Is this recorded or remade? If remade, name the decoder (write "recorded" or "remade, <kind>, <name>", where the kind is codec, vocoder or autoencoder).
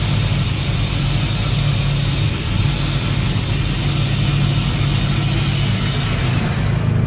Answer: recorded